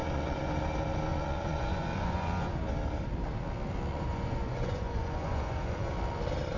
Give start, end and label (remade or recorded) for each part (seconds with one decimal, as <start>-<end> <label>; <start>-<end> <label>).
0.0-0.6 remade; 0.6-1.1 recorded; 1.1-2.6 remade; 2.6-3.9 recorded; 3.9-5.9 remade; 5.9-6.6 recorded